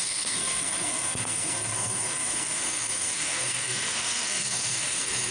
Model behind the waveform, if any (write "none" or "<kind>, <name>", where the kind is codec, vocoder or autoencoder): codec, SNAC